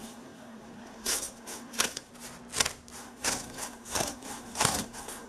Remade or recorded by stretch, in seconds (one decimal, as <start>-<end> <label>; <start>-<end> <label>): 0.0-2.1 remade; 2.1-3.0 recorded; 3.0-5.3 remade